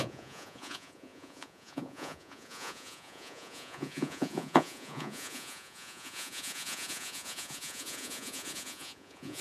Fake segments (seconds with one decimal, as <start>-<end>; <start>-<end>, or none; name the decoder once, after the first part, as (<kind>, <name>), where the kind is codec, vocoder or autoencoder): 0.0-9.4 (vocoder, Vocos)